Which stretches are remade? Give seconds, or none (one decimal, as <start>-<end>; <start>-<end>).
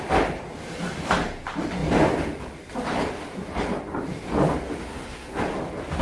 4.8-5.4